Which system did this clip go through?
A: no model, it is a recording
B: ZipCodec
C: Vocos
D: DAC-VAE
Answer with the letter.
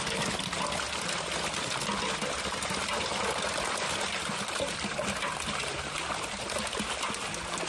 A